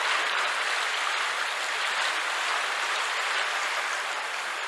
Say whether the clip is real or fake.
real